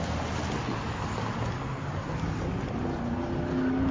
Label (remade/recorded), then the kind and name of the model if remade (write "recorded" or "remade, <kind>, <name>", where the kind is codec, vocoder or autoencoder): recorded